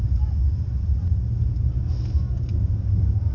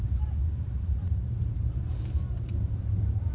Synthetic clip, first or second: second